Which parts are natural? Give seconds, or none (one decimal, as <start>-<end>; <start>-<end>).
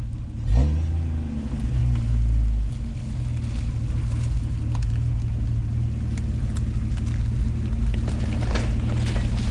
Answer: 0.0-9.5